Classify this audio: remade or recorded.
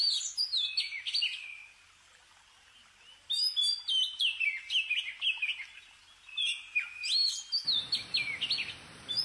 recorded